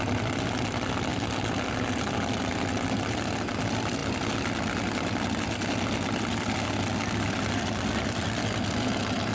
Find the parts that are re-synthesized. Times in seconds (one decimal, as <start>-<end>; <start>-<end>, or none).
none